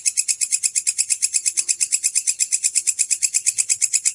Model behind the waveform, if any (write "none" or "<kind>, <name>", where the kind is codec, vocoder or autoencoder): none